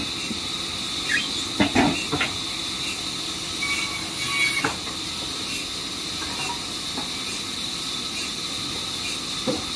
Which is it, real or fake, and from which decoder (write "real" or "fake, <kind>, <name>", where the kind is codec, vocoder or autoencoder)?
real